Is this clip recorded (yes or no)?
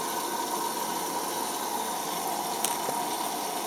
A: yes